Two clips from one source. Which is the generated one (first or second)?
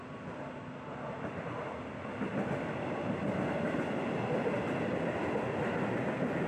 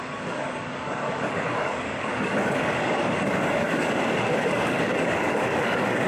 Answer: second